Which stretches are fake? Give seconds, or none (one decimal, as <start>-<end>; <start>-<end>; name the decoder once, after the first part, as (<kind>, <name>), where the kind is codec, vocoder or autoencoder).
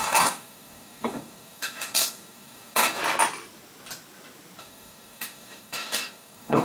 0.0-3.0 (codec, DAC); 4.6-6.6